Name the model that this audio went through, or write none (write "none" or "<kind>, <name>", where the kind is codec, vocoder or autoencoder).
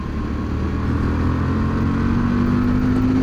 none